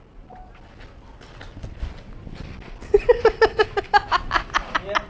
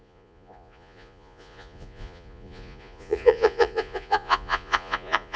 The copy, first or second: second